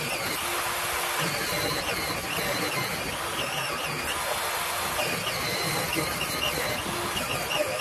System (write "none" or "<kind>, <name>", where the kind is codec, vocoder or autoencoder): none